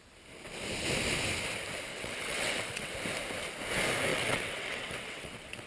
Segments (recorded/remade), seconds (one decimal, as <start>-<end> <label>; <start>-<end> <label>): 0.0-1.9 recorded; 1.9-2.9 remade; 2.9-4.1 recorded; 4.1-5.7 remade